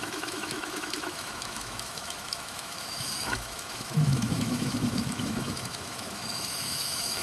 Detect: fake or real fake